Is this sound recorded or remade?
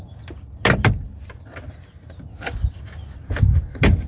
recorded